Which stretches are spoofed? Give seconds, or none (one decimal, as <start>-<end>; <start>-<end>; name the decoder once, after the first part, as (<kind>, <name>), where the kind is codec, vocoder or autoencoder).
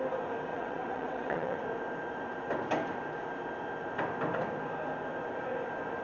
0.5-1.6 (vocoder, WaveNeXt)